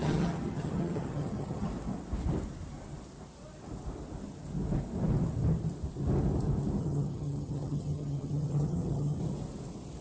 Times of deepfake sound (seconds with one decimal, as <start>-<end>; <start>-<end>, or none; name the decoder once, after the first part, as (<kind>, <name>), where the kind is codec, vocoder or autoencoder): 0.0-1.7 (vocoder, HiFi-GAN); 6.8-9.2